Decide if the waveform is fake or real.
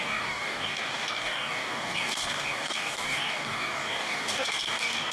fake